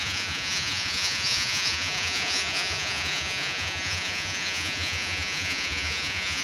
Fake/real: fake